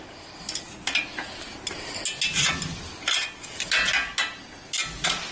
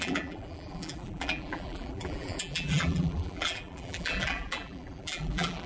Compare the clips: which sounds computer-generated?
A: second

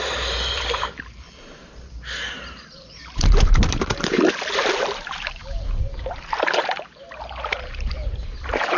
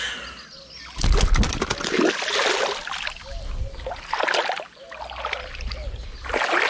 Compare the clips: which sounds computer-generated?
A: first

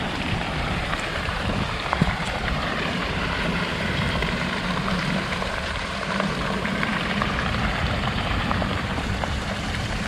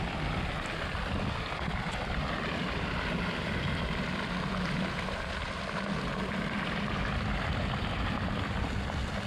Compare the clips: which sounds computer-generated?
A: first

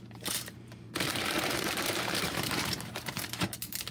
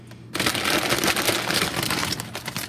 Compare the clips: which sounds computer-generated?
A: first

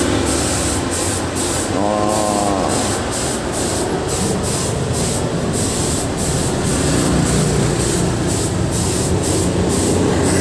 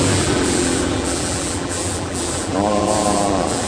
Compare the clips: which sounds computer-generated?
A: second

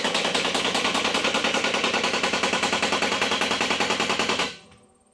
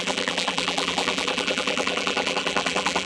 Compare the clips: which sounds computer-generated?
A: second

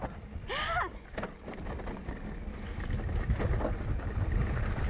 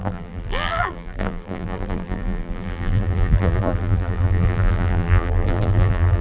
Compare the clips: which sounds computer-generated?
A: second